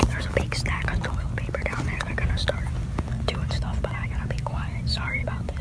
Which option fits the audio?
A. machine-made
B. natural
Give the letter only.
B